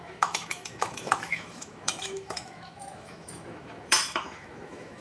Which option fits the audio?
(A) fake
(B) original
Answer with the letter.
A